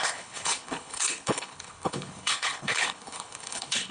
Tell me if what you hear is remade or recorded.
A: remade